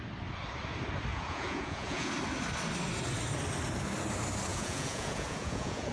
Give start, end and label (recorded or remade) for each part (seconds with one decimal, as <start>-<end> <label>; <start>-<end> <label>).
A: 0.0-1.1 recorded; 1.1-2.1 remade; 2.1-4.5 recorded; 4.5-5.9 remade